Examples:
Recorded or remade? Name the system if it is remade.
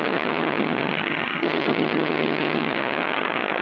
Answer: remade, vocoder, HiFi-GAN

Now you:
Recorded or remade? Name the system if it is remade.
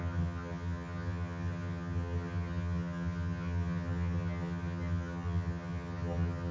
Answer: remade, vocoder, HiFi-GAN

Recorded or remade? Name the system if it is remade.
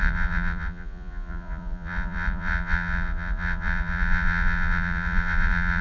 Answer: remade, vocoder, Vocos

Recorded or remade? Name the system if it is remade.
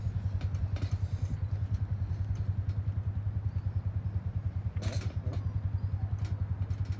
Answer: recorded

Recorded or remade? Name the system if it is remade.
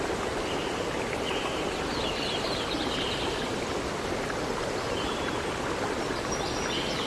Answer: recorded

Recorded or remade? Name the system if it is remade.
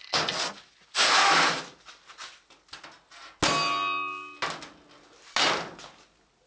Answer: recorded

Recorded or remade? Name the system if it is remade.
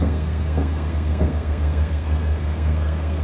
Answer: remade, codec, SNAC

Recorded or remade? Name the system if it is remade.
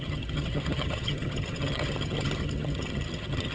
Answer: remade, vocoder, HiFi-GAN